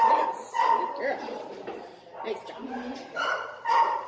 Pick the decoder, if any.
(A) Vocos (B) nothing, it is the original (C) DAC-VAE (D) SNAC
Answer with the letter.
B